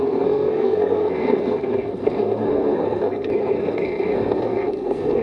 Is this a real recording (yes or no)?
no